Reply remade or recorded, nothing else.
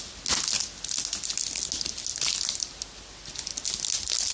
recorded